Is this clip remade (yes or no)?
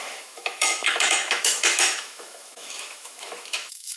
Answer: yes